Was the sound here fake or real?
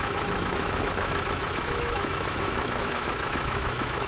fake